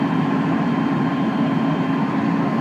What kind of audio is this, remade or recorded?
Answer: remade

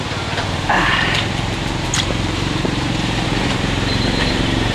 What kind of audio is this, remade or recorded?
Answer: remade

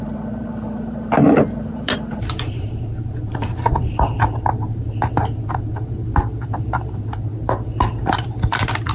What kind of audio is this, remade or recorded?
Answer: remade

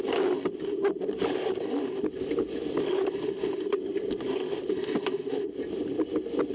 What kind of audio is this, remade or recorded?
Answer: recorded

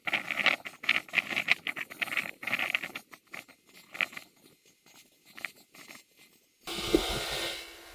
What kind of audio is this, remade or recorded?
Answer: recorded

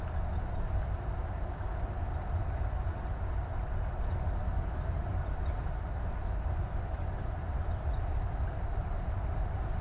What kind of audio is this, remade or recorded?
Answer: recorded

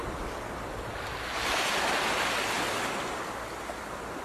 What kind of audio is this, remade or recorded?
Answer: recorded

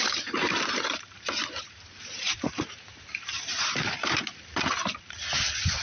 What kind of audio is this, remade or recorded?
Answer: remade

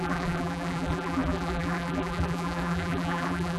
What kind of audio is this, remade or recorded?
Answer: remade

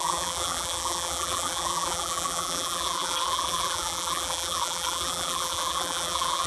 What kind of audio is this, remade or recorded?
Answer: remade